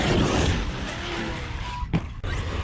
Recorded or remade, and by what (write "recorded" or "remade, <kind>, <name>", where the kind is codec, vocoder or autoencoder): recorded